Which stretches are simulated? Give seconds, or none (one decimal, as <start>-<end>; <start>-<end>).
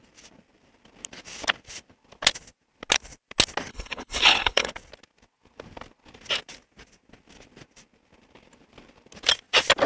3.7-4.7